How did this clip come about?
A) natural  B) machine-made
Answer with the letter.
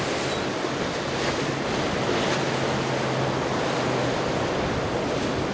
A